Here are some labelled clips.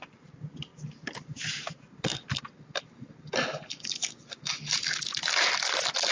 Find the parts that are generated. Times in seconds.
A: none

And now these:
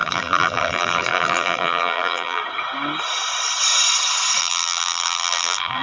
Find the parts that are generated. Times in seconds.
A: 0.0-2.4 (vocoder, BigVGAN v2); 4.4-5.8

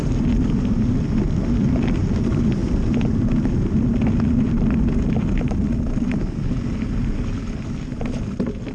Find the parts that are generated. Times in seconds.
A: 0.0-2.6 (vocoder, BigVGAN v2); 6.2-8.7

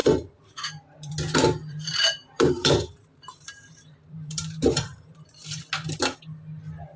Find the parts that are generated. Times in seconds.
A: 0.0-1.1 (vocoder, BigVGAN v2); 1.6-5.6